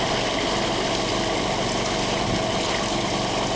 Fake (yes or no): no